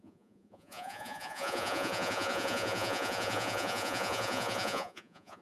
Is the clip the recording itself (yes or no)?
no